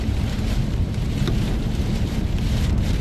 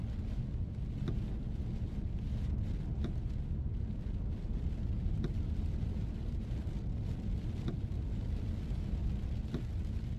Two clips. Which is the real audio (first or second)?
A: second